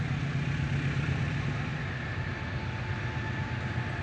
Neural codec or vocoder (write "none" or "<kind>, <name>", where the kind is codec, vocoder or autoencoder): none